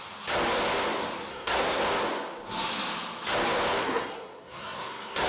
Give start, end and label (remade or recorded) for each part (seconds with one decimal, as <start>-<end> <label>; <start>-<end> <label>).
0.0-1.3 recorded; 1.3-1.8 remade; 1.8-3.8 recorded; 3.8-5.3 remade